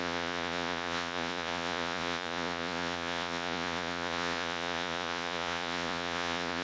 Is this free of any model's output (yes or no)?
no